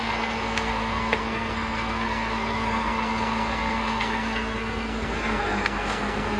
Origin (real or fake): fake